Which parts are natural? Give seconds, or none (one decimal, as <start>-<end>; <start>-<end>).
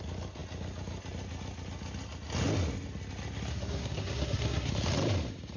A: 0.0-3.5; 4.7-5.6